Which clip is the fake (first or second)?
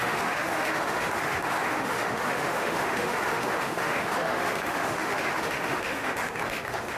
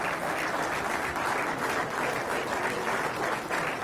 first